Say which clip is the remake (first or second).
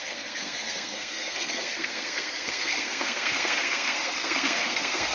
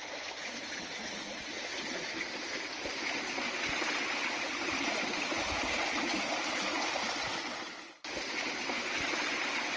first